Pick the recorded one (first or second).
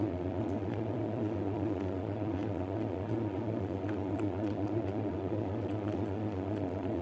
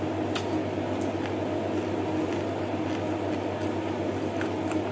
second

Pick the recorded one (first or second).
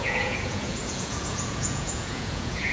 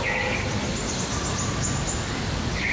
second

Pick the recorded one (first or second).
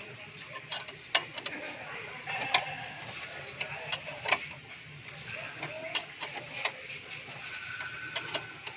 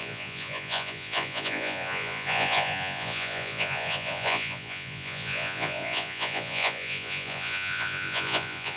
first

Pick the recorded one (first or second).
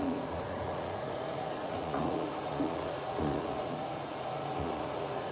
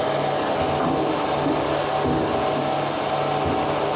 second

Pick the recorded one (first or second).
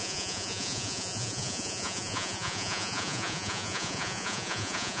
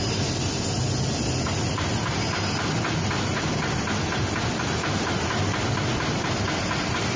second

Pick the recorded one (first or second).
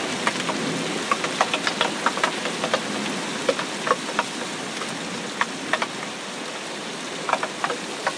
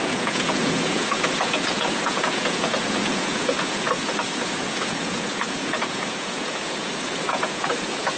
first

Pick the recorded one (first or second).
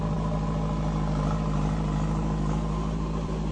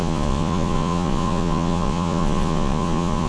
first